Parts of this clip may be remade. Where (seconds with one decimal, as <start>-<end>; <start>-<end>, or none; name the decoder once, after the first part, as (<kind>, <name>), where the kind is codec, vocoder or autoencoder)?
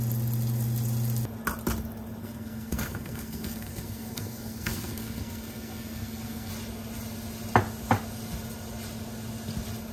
2.2-6.5 (codec, SNAC)